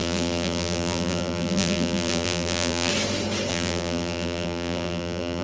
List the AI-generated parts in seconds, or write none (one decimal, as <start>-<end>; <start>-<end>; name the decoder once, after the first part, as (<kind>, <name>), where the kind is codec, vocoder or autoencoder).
0.0-2.9 (vocoder, BigVGAN v2); 3.5-5.4